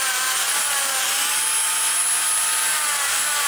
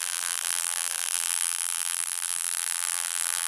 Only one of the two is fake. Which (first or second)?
second